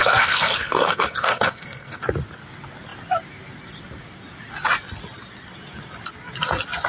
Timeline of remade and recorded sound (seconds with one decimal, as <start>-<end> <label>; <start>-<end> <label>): 0.0-2.0 remade; 2.0-6.9 recorded